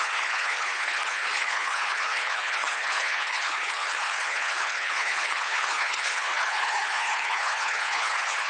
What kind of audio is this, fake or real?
fake